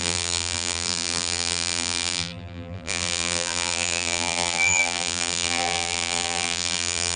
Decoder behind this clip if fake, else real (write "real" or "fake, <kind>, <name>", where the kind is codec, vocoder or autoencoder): fake, vocoder, BigVGAN v2